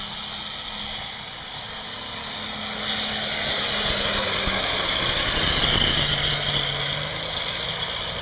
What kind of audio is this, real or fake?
real